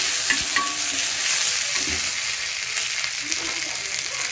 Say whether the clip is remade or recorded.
recorded